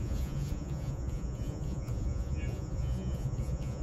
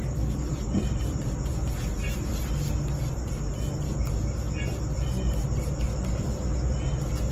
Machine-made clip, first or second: first